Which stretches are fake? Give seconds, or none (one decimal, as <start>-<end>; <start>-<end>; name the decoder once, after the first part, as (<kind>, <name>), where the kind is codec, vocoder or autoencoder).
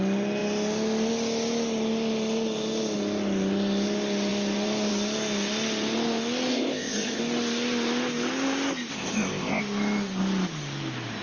6.5-7.2 (codec, ZipCodec); 8.9-9.6